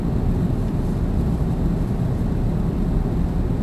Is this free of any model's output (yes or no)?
yes